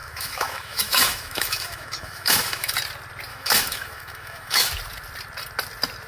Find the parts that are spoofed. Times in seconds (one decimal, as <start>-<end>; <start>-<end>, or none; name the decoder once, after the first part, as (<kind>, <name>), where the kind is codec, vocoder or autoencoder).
0.0-2.7 (autoencoder, DAC-VAE); 3.3-4.7